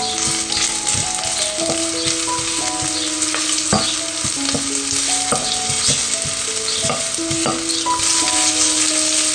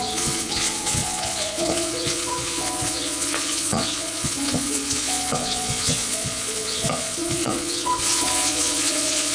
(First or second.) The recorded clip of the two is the first